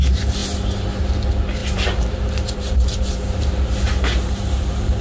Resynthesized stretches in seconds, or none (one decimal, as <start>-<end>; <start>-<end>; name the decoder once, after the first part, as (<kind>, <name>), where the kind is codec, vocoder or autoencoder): 0.0-0.4 (vocoder, BigVGAN v2); 1.0-5.0